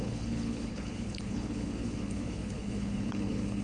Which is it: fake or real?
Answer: fake